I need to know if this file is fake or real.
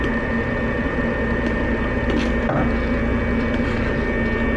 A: real